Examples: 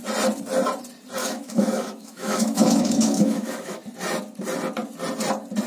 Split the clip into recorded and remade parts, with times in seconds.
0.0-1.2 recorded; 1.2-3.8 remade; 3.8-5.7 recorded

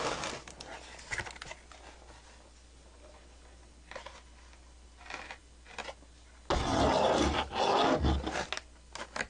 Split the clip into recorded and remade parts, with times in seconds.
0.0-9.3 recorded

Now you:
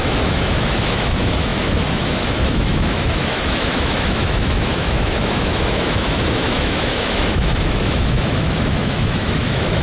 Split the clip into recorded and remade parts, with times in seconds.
0.0-9.8 remade

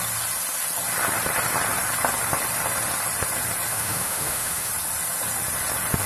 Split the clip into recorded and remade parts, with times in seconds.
0.0-3.7 recorded; 3.7-4.7 remade; 4.7-6.1 recorded

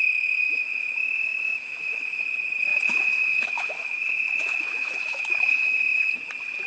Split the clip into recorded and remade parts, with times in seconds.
0.0-0.4 recorded; 0.4-2.2 remade; 2.2-2.7 recorded; 2.7-6.1 remade; 6.1-6.7 recorded

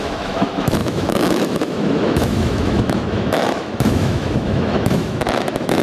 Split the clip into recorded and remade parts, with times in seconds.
0.0-5.8 remade